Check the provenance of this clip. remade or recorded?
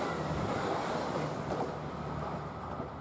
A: recorded